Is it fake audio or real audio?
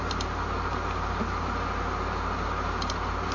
real